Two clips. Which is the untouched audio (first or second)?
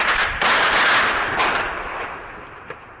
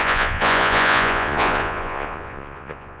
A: first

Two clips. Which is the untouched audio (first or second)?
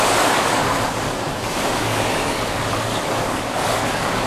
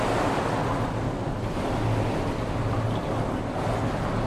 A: second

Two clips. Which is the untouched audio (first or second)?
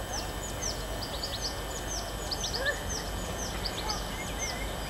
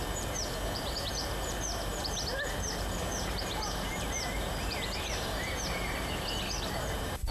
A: first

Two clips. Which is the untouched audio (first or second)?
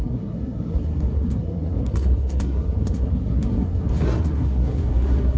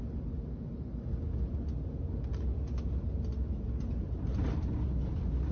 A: second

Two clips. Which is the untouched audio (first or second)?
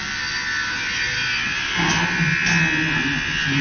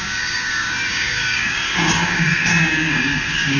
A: first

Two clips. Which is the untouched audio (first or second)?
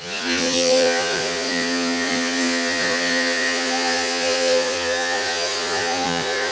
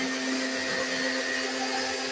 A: second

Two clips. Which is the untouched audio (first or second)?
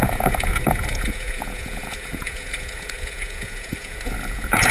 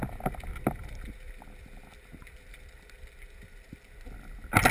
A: second